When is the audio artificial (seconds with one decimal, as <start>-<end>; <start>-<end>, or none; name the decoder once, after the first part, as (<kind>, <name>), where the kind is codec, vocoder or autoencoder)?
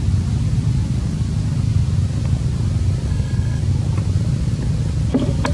3.1-3.6 (codec, SNAC)